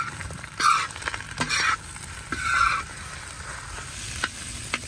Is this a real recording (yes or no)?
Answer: yes